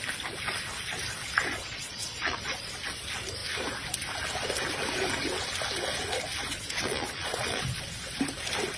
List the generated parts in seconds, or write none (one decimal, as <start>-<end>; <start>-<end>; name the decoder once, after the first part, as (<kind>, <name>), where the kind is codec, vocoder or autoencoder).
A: 1.5-2.6 (vocoder, Vocos); 6.5-7.6

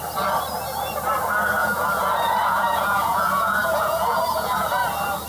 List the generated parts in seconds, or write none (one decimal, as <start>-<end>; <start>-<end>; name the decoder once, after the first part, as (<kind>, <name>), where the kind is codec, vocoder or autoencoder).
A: 1.6-4.8 (vocoder, Vocos)

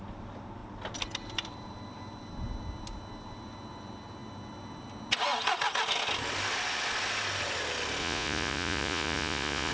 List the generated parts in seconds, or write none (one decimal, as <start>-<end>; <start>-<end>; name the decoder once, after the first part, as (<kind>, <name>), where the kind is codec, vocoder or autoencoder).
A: 8.0-9.7 (vocoder, Vocos)